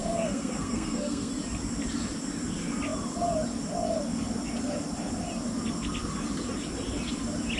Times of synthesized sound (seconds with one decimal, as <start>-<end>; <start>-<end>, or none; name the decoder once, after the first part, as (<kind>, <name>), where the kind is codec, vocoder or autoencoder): 0.0-1.3 (codec, SNAC)